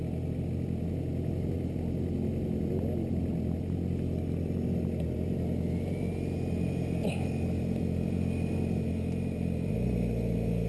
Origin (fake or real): real